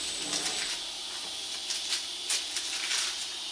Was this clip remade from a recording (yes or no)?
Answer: yes